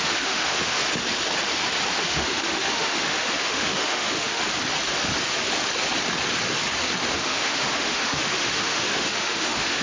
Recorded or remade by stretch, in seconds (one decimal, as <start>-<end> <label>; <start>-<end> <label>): 0.0-0.8 remade; 0.8-2.0 recorded; 2.0-4.4 remade; 4.4-7.2 recorded; 7.2-9.8 remade

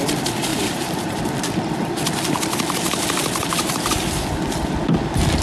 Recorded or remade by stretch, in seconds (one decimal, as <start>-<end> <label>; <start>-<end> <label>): 0.0-0.5 recorded; 0.5-1.2 remade; 1.2-3.4 recorded; 3.4-4.0 remade; 4.0-5.4 recorded

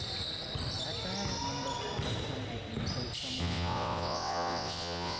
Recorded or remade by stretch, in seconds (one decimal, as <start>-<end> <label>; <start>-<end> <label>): 0.0-3.4 recorded; 3.4-5.2 remade

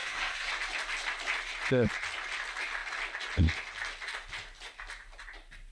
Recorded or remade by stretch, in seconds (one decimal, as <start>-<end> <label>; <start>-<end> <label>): 0.0-0.5 remade; 0.5-5.7 recorded

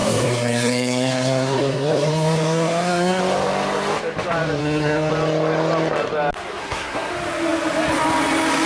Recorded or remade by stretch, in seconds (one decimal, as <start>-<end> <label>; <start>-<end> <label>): 0.0-3.2 remade; 3.2-4.6 recorded; 4.6-5.1 remade; 5.1-6.6 recorded; 6.6-7.1 remade; 7.1-8.7 recorded